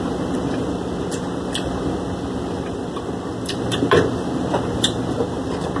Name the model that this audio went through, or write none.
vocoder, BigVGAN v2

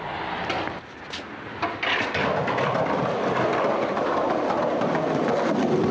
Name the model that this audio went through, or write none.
none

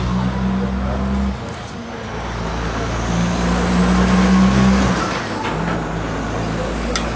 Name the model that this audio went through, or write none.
none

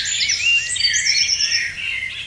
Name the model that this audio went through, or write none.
none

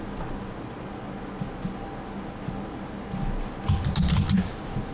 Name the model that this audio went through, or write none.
none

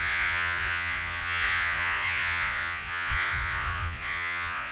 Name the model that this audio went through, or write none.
vocoder, Vocos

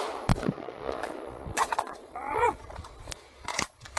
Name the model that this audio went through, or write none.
vocoder, Vocos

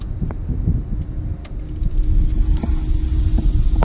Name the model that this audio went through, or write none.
none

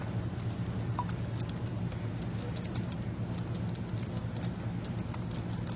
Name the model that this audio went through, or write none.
none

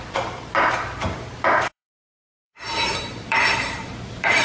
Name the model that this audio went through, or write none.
vocoder, BigVGAN v2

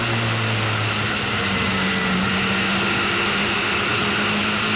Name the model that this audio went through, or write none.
none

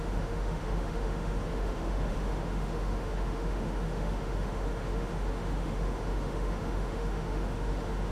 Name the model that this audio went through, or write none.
autoencoder, DAC-VAE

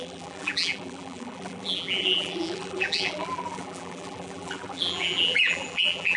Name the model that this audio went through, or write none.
vocoder, BigVGAN v2